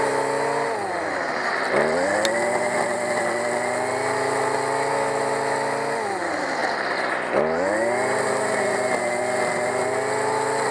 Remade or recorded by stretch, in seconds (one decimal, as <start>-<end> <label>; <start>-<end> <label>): 0.0-10.7 recorded